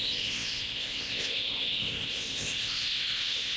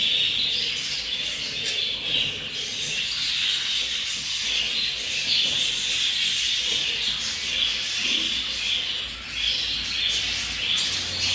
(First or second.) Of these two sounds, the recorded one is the second